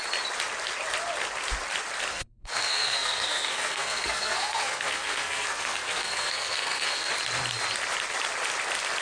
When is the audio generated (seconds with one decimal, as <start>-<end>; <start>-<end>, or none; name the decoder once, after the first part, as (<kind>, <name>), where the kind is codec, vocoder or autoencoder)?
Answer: 2.1-7.1 (codec, SNAC)